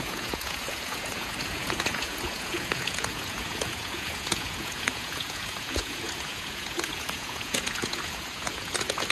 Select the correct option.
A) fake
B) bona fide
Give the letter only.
A